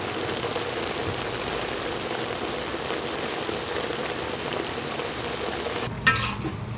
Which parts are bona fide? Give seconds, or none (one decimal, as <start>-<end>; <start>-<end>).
0.0-6.8